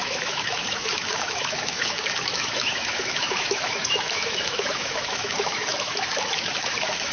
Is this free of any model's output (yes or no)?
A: no